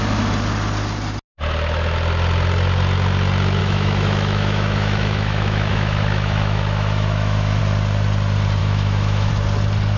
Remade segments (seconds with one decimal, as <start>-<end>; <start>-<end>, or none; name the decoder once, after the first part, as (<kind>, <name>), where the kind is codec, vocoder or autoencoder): 3.6-7.6 (autoencoder, DAC-VAE); 8.6-9.3